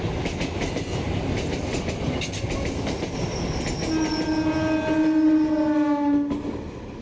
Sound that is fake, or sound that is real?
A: real